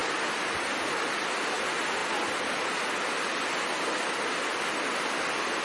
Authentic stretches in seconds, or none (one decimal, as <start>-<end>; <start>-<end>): 0.0-5.6